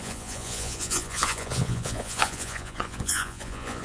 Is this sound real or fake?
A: fake